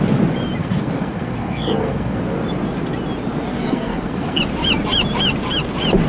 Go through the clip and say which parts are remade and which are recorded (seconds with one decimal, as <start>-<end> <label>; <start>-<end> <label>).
0.0-0.6 recorded; 0.6-2.2 remade; 2.2-3.5 recorded; 3.5-4.4 remade; 4.4-6.1 recorded